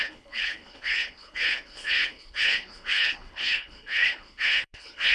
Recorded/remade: remade